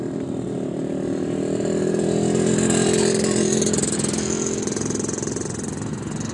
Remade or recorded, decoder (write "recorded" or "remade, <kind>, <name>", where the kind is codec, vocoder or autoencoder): recorded